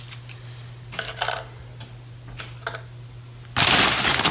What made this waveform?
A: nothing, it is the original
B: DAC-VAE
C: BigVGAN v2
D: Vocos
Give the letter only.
A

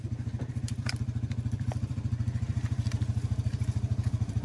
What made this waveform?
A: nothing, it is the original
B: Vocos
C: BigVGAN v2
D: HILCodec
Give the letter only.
C